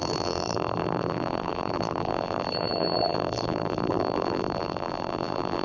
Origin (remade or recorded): remade